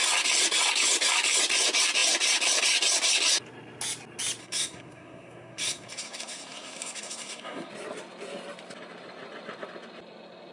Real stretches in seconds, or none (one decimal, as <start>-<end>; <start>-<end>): 0.0-4.4; 7.7-10.5